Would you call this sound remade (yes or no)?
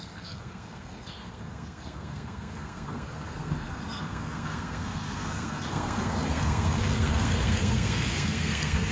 yes